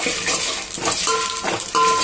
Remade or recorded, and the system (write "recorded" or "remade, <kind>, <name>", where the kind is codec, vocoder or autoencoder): recorded